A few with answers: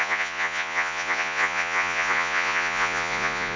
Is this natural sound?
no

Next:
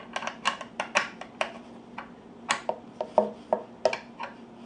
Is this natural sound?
yes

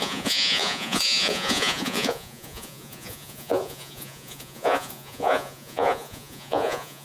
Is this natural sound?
no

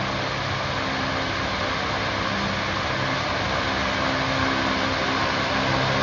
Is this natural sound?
yes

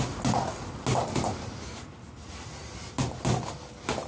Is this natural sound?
yes